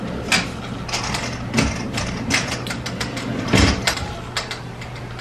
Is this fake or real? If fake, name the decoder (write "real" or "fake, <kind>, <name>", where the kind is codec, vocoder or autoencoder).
real